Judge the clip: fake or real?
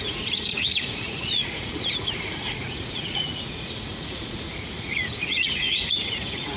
fake